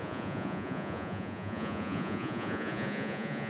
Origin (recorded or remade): remade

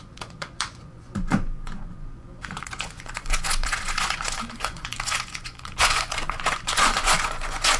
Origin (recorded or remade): remade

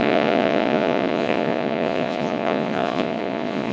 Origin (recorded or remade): remade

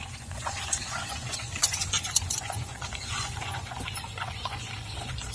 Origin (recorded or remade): remade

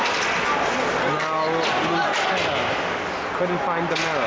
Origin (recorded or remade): recorded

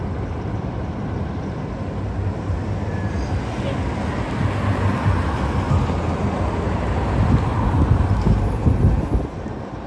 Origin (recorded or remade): recorded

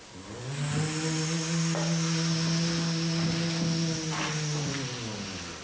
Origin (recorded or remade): recorded